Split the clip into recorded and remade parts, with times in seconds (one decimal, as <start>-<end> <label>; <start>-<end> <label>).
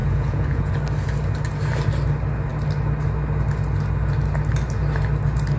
0.0-0.7 remade; 0.7-5.6 recorded